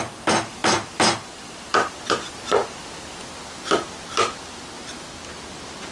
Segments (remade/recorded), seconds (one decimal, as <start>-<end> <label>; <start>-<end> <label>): 0.0-2.6 remade; 2.6-5.5 recorded; 5.5-5.9 remade